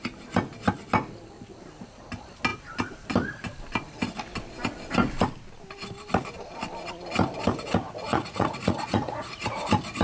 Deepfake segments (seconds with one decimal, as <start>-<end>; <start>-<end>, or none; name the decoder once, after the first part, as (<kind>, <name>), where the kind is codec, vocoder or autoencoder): 8.1-9.6 (vocoder, Vocos)